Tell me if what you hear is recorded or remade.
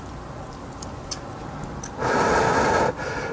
recorded